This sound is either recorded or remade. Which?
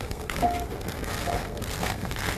remade